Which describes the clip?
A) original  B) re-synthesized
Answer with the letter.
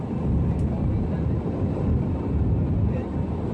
A